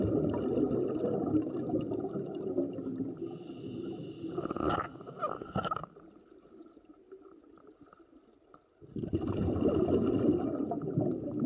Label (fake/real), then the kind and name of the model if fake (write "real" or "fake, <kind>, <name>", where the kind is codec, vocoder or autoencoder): real